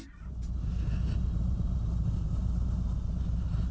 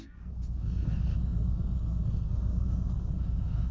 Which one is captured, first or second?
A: first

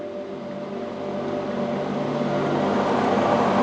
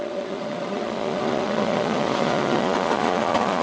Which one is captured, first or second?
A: first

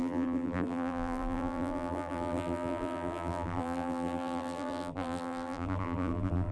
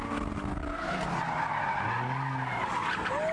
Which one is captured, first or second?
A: second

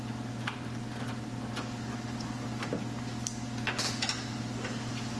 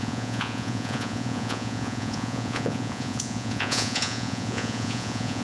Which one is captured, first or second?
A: first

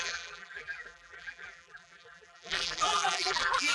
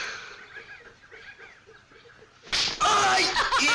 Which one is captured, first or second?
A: second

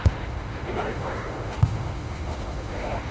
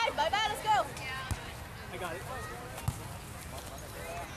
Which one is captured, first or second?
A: second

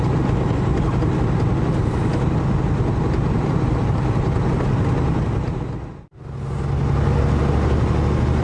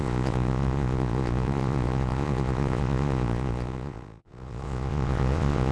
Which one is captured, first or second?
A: first